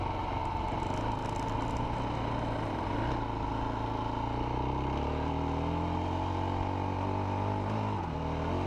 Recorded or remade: recorded